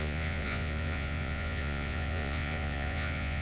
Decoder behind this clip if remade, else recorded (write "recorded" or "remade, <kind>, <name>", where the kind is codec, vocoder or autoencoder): remade, vocoder, Vocos